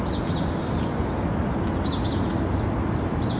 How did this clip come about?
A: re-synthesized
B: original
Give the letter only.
B